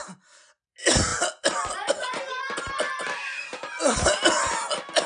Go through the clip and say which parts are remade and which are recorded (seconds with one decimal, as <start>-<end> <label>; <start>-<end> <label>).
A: 0.0-5.1 recorded